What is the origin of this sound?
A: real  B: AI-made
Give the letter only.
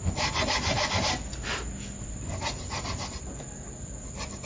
A